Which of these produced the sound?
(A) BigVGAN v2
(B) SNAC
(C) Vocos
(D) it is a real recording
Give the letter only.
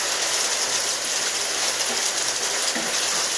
D